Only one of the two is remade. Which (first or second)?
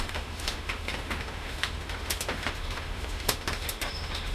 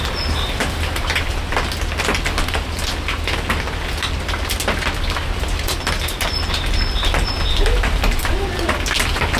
first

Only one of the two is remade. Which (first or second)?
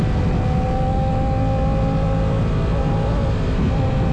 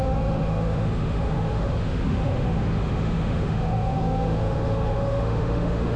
second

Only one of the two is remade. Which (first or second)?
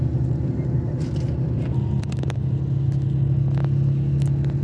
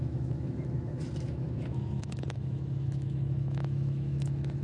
second